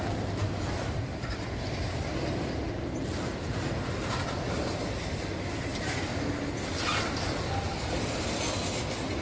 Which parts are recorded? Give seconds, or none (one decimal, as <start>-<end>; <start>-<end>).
0.0-9.2